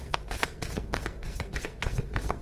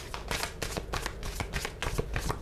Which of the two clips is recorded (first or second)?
second